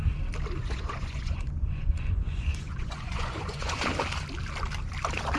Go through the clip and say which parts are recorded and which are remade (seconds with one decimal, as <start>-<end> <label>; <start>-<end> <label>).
0.0-0.6 recorded; 0.6-3.8 remade; 3.8-5.4 recorded